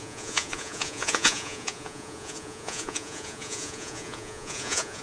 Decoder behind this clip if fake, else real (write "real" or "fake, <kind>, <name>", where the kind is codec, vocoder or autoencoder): fake, vocoder, Vocos